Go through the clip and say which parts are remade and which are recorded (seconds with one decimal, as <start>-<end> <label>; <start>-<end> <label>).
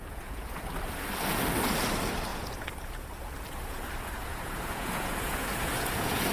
0.0-0.7 remade; 0.7-2.3 recorded; 2.3-6.3 remade